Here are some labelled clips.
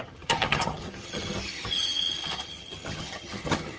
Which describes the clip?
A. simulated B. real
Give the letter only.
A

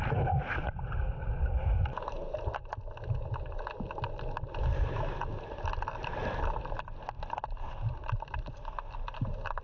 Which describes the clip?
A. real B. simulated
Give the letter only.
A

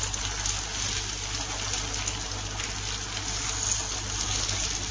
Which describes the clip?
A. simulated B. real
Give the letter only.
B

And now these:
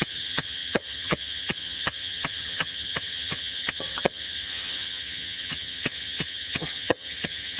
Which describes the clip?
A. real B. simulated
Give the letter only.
B